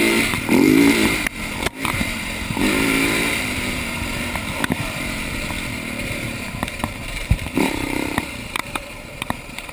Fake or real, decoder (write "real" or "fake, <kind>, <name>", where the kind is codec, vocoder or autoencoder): fake, vocoder, BigVGAN v2